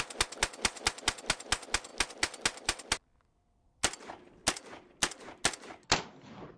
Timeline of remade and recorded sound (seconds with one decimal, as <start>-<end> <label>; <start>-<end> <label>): 0.0-6.6 recorded